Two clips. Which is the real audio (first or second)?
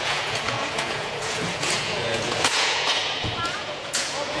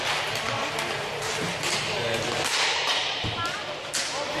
second